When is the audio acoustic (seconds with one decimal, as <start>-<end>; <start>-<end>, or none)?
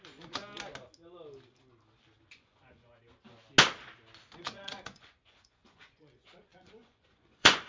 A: 0.4-2.3; 2.9-4.4